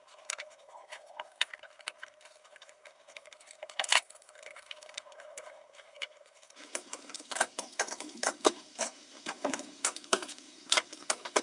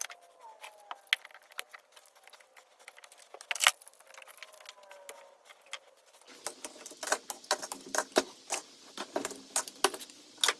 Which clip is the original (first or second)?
second